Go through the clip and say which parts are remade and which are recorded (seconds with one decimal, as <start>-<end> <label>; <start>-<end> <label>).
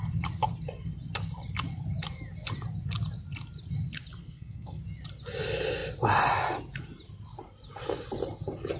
0.0-4.2 recorded; 4.2-4.8 remade; 4.8-8.8 recorded